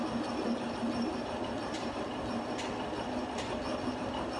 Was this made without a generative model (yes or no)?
yes